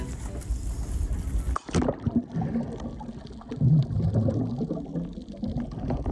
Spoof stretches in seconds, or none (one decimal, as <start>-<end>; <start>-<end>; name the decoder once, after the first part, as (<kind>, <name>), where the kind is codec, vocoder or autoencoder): none